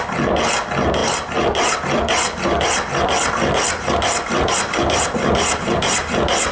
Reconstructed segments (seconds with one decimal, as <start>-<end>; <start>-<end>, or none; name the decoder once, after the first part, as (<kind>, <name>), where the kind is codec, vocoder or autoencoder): none